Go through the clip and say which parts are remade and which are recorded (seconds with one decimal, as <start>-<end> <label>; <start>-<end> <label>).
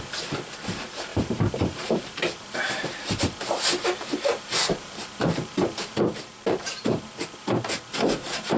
0.0-1.1 recorded; 1.1-3.2 remade; 3.2-4.1 recorded; 4.1-7.5 remade; 7.5-8.6 recorded